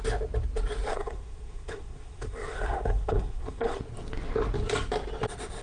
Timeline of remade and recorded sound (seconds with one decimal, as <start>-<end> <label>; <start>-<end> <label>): 0.0-0.9 recorded; 0.9-3.8 remade; 3.8-5.6 recorded